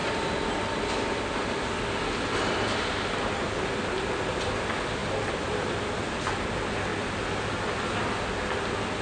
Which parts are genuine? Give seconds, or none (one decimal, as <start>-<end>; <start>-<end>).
0.0-9.0